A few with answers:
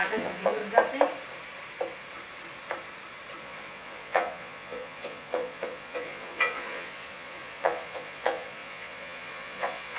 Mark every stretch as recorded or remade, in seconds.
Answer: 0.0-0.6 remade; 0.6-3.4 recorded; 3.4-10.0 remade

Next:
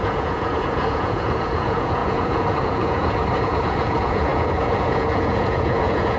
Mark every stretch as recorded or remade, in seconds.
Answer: 0.0-6.2 remade

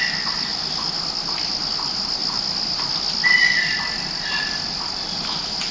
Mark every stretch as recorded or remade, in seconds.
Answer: 0.0-5.7 recorded